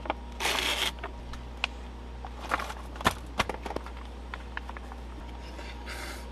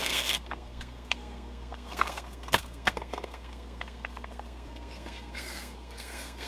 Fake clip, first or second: second